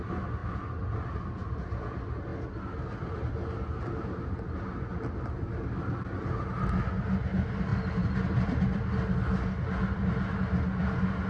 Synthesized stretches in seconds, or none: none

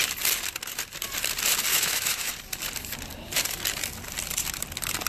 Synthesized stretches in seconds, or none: 1.7-2.3 (autoencoder, DAC-VAE)

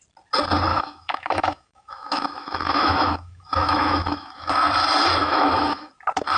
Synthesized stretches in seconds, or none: 0.7-4.5 (autoencoder, DAC-VAE); 5.2-5.9

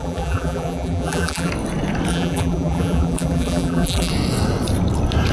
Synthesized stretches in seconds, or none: 0.0-1.5 (vocoder, BigVGAN v2); 2.1-4.1

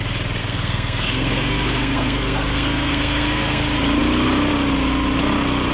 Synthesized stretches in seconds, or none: 0.4-3.6 (codec, SNAC)

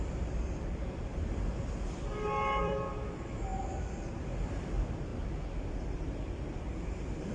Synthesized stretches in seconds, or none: 0.0-1.1 (vocoder, BigVGAN v2); 2.6-3.5; 4.2-5.1; 5.7-7.3

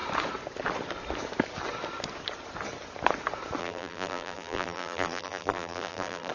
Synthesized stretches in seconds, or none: 3.6-6.3 (vocoder, BigVGAN v2)

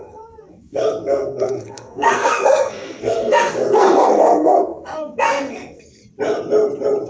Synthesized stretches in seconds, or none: 0.0-6.0 (codec, SNAC)